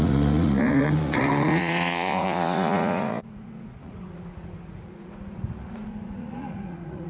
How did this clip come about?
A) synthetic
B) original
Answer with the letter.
A